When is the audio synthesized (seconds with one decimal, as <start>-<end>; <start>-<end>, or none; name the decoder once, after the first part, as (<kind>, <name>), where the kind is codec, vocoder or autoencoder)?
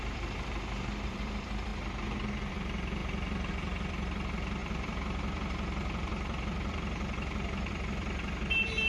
0.0-1.7 (vocoder, BigVGAN v2); 2.5-3.0; 3.5-8.9